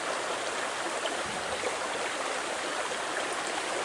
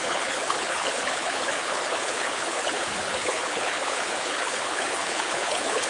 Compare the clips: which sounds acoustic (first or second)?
first